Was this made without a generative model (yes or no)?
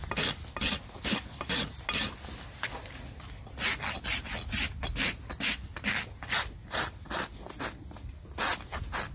yes